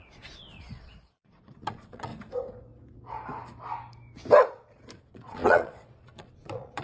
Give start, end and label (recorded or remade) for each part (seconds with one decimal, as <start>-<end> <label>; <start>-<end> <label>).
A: 0.0-2.1 remade; 2.1-5.0 recorded; 5.0-6.8 remade